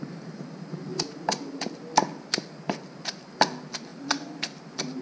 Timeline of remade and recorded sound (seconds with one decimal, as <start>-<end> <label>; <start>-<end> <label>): 0.0-3.9 recorded; 3.9-5.0 remade